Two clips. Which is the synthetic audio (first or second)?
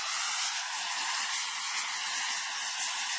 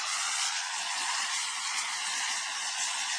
second